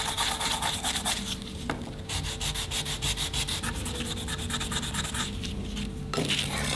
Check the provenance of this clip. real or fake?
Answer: fake